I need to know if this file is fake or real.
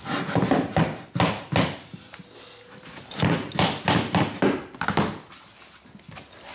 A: real